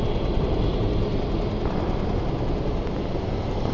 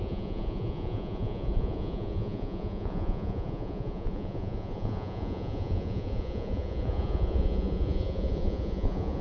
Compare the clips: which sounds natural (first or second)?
first